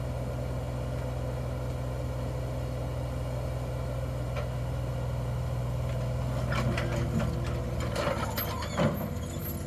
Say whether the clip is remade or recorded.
recorded